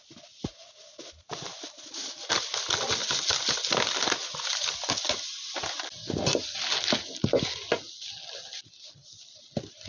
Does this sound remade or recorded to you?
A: recorded